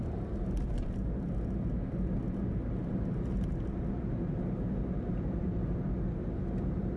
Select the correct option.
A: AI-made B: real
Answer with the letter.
B